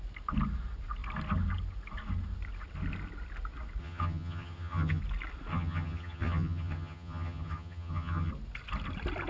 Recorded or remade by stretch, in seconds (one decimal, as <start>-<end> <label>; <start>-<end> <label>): 0.0-3.8 recorded; 3.8-5.0 remade; 5.0-5.5 recorded; 5.5-8.3 remade; 8.3-9.3 recorded